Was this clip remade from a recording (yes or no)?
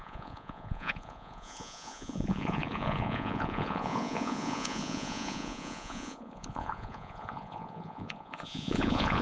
yes